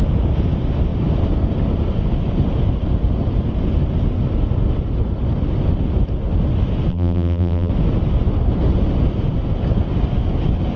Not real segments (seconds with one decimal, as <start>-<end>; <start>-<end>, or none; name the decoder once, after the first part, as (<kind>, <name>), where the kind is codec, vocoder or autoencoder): 6.9-7.7 (vocoder, BigVGAN v2)